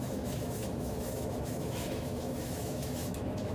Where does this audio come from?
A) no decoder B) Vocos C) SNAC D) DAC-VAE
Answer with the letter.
D